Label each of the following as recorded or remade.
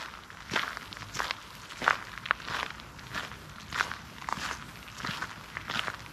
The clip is recorded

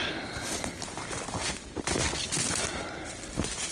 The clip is recorded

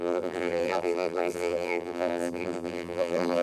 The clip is remade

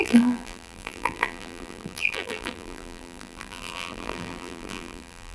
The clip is remade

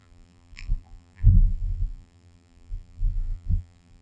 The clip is remade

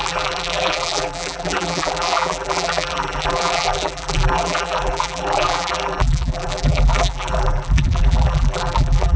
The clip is remade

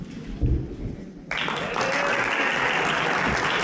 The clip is recorded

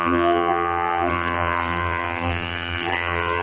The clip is remade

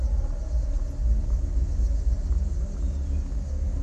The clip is recorded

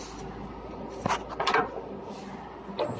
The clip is recorded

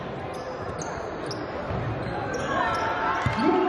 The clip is recorded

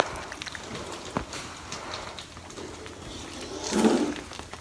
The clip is recorded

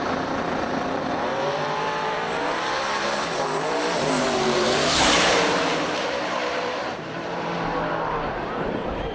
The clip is remade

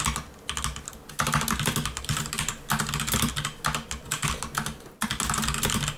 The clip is recorded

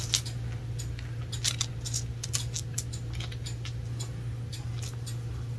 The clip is recorded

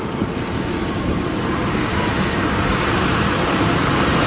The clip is remade